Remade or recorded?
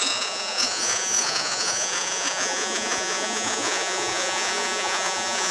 remade